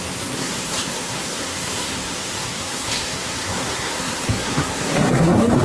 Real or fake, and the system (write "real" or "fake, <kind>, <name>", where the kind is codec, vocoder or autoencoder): fake, codec, SNAC